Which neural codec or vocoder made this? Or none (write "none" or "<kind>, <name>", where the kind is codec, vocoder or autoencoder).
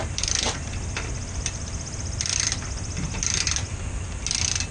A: none